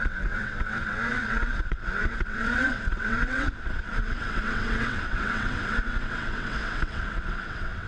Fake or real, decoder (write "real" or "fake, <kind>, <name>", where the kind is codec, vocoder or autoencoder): fake, vocoder, WaveNeXt